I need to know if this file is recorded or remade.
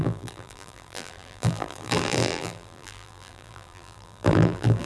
remade